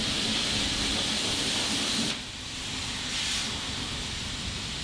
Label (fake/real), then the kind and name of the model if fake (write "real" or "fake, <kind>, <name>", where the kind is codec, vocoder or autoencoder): real